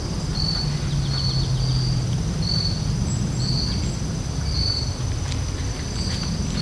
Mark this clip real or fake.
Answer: real